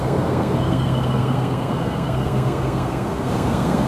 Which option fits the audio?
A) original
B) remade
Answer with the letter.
B